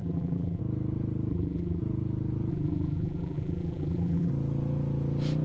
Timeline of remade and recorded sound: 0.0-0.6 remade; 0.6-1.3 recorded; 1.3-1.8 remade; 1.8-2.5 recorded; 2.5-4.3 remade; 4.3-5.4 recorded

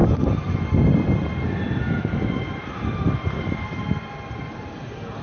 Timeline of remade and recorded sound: 0.0-5.2 recorded

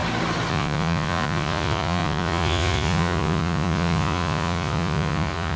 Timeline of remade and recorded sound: 0.0-0.5 recorded; 0.5-5.6 remade

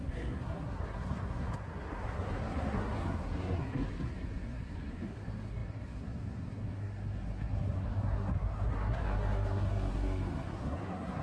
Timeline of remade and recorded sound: 0.0-11.2 remade

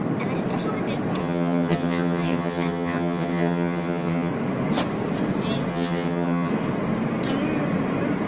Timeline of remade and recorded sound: 0.0-1.2 recorded; 1.2-4.3 remade; 4.3-5.7 recorded; 5.7-6.5 remade; 6.5-8.3 recorded

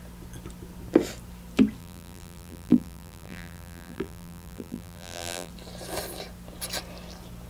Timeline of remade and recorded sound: 0.0-1.8 recorded; 1.8-5.5 remade; 5.5-7.5 recorded

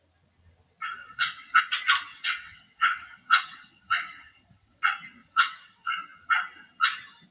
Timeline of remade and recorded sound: 0.0-1.0 recorded; 1.0-1.6 remade; 1.6-2.1 recorded; 2.1-4.8 remade; 4.8-5.2 recorded; 5.2-5.9 remade; 5.9-7.3 recorded

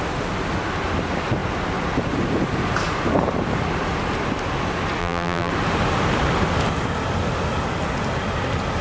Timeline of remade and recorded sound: 0.0-5.0 recorded; 5.0-5.5 remade; 5.5-8.8 recorded